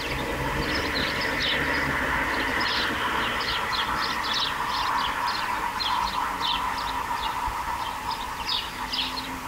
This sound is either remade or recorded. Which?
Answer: recorded